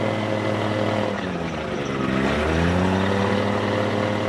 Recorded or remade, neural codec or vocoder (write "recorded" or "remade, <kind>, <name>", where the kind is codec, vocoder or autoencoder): recorded